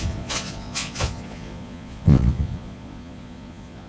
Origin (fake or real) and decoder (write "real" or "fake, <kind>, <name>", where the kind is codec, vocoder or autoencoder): fake, vocoder, Vocos